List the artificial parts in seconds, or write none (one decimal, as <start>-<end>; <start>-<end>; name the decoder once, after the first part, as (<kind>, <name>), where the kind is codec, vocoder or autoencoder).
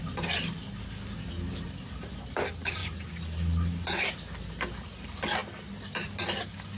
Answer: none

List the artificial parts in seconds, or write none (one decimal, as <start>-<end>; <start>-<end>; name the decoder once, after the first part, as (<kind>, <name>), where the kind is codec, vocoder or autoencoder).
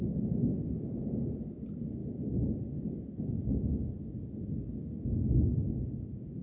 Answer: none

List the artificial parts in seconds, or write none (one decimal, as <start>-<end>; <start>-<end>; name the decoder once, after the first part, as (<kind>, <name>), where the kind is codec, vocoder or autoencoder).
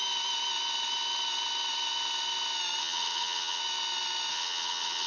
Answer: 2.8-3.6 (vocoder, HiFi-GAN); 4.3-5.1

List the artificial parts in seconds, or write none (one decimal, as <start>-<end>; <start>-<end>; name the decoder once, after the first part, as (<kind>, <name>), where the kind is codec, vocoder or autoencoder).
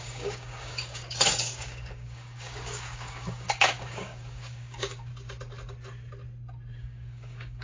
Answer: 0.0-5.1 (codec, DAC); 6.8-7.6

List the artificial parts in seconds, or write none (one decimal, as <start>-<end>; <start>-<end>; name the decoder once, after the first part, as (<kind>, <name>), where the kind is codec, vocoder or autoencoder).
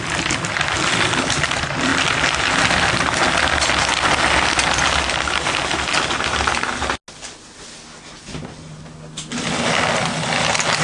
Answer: none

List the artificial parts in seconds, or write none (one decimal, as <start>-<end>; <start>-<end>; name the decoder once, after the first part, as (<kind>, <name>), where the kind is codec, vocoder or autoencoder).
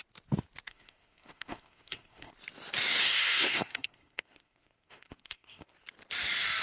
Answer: 0.7-2.3 (codec, SNAC); 3.0-5.7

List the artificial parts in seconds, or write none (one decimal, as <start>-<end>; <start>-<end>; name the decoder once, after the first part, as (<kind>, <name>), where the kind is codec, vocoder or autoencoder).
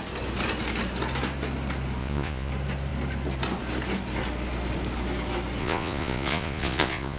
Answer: 2.0-2.5 (vocoder, Vocos); 5.6-7.2